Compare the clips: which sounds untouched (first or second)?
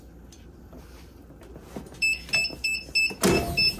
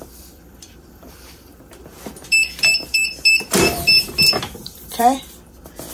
first